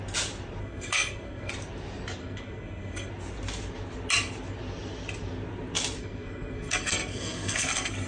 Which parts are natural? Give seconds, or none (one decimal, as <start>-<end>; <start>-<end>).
0.0-0.6; 1.5-2.2; 3.1-6.0